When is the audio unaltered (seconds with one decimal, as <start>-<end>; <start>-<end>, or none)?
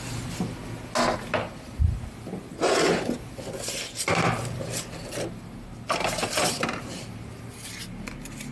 0.0-8.5